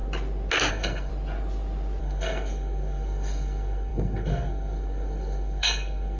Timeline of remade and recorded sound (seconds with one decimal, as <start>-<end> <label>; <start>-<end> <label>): 0.0-0.7 recorded; 0.7-1.1 remade; 1.1-2.0 recorded; 2.0-6.2 remade